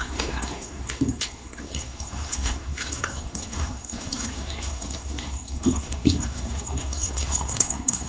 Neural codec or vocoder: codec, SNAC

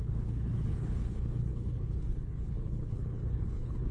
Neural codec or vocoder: codec, HILCodec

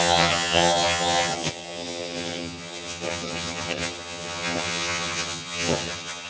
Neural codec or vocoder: vocoder, HiFi-GAN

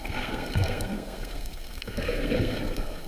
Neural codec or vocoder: codec, SNAC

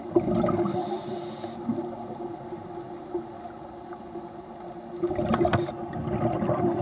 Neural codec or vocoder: none